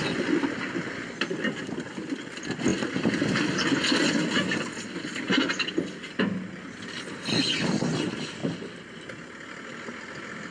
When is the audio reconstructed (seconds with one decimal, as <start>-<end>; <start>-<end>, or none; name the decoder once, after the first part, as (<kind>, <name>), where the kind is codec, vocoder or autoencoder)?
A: none